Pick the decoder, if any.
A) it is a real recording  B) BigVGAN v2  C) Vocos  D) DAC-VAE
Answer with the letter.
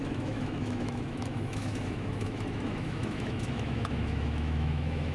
D